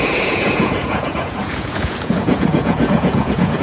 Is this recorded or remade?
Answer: remade